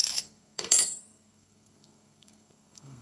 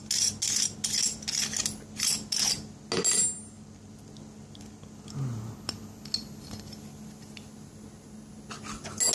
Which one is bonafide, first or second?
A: second